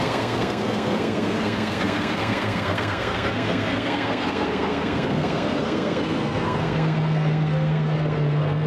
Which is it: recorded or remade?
remade